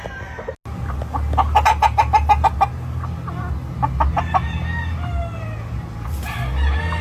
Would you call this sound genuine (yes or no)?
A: yes